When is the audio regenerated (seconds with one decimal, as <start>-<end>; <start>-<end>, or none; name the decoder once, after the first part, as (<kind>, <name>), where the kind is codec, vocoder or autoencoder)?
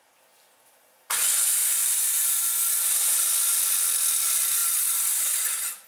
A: 1.6-3.6 (vocoder, BigVGAN v2)